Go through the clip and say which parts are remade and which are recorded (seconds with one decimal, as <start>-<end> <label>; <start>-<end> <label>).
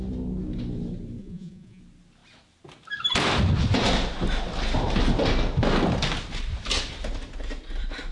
0.0-1.2 recorded; 1.2-1.8 remade; 1.8-8.1 recorded